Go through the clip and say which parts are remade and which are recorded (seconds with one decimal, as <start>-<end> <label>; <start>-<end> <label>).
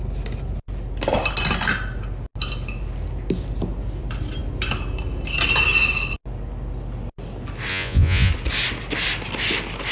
0.0-7.7 recorded; 7.7-8.3 remade; 8.3-9.9 recorded